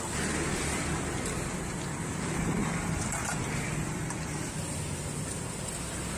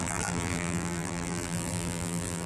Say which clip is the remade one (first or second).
second